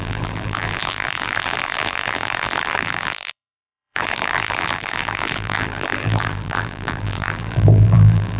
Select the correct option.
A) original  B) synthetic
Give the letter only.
B